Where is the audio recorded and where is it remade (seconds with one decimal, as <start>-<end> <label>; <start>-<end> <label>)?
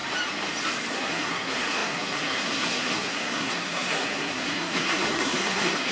0.0-0.9 recorded; 0.9-5.9 remade